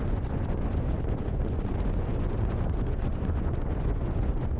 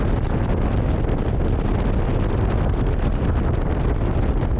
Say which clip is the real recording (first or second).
second